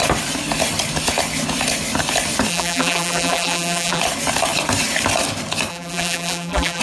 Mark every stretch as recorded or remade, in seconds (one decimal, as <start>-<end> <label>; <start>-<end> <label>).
0.0-2.5 recorded; 2.5-4.0 remade; 4.0-5.7 recorded; 5.7-6.8 remade